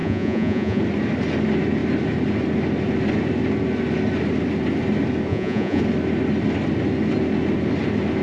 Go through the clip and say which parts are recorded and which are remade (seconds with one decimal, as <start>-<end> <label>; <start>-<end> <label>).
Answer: 0.0-0.8 remade; 0.8-5.3 recorded; 5.3-5.8 remade; 5.8-8.2 recorded